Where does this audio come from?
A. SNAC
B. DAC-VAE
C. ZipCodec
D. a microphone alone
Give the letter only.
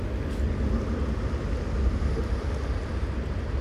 D